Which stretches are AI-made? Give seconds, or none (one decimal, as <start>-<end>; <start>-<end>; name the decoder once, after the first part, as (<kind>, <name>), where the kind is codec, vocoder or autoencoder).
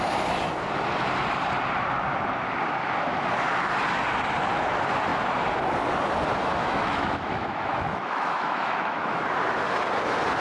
6.6-9.2 (autoencoder, DAC-VAE)